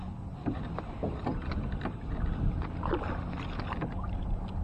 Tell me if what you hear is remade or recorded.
recorded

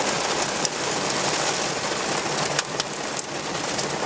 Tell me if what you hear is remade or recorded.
recorded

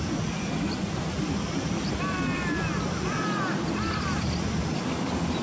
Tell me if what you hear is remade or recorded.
recorded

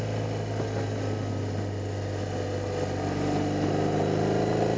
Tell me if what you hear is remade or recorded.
recorded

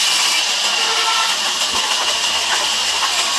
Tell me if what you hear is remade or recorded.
recorded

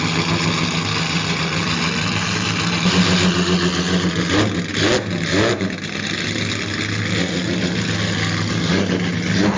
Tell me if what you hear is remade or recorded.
recorded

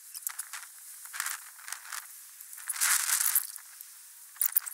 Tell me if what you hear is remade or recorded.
recorded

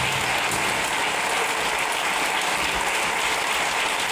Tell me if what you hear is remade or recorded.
recorded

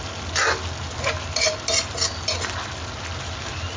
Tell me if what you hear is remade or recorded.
recorded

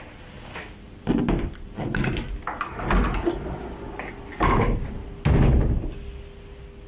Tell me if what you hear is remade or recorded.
recorded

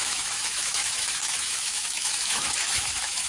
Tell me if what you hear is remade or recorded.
remade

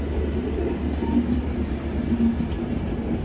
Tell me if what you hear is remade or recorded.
recorded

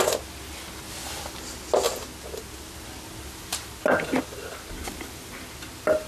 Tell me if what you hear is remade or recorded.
recorded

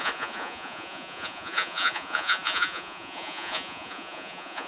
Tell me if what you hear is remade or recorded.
remade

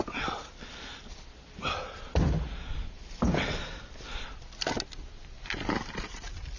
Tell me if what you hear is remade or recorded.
recorded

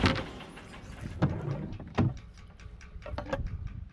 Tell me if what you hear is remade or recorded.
remade